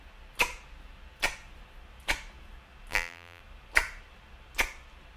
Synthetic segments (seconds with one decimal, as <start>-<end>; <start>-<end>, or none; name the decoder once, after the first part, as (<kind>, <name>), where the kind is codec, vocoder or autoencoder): 2.9-3.4 (vocoder, BigVGAN v2)